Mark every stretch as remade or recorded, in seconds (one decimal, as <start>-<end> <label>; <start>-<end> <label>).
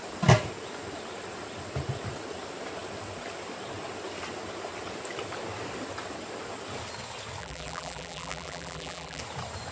0.0-7.4 recorded; 7.4-9.2 remade; 9.2-9.7 recorded